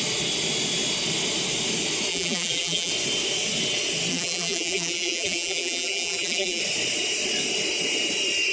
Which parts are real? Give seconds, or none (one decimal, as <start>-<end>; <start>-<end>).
0.0-2.1; 2.9-4.1; 6.6-8.5